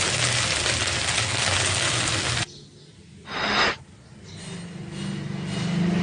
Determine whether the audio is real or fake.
real